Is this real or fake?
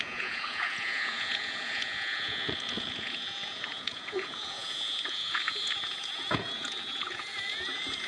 fake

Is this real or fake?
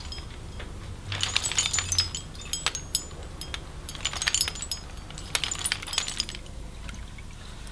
real